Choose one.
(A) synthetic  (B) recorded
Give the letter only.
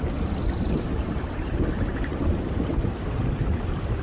B